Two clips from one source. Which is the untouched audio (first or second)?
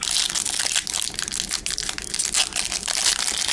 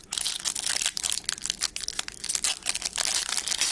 first